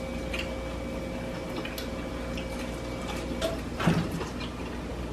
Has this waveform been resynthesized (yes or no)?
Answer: no